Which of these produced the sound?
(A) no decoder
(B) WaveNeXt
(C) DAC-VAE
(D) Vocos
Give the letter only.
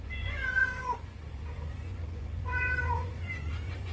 D